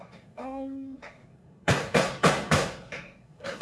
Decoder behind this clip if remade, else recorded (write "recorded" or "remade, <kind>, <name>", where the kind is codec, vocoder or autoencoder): remade, codec, SNAC